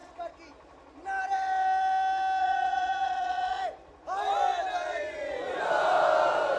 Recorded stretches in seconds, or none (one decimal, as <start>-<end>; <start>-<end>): 0.0-2.4; 3.6-4.9; 5.6-6.6